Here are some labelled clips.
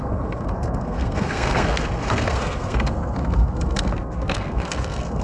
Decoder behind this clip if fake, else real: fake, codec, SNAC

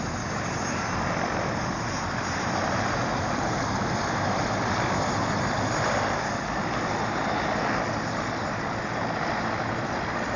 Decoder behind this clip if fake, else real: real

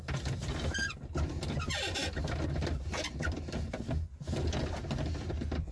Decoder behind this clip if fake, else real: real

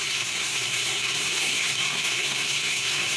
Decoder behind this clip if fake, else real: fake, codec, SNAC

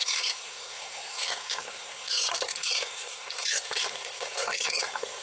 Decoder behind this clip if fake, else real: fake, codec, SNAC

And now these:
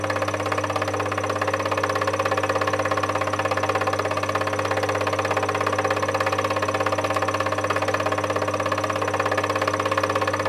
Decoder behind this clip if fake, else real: real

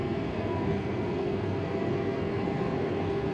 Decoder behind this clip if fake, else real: fake, codec, SNAC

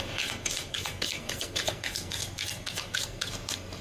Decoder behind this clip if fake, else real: fake, codec, SNAC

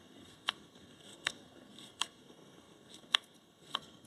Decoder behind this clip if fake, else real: fake, codec, SNAC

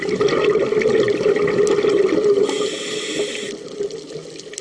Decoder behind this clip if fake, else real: real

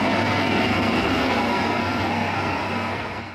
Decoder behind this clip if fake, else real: fake, codec, SNAC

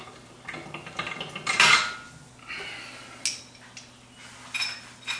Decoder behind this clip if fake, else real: real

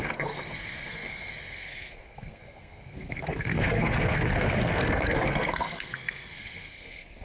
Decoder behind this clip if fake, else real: fake, codec, SNAC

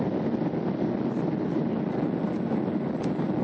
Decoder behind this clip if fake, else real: real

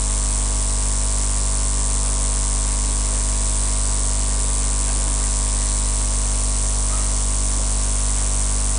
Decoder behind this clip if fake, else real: real